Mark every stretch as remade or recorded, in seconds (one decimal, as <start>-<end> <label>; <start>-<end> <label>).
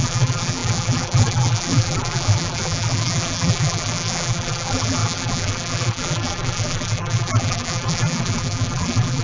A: 0.0-9.2 remade